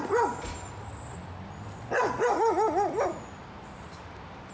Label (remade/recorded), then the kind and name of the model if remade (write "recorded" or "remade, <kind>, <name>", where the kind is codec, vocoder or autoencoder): recorded